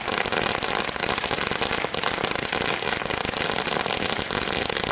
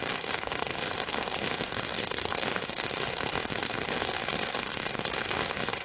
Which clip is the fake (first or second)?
second